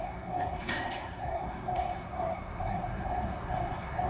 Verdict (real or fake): fake